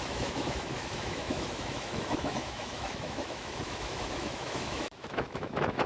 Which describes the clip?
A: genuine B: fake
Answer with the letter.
B